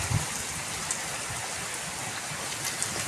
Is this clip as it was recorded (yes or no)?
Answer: yes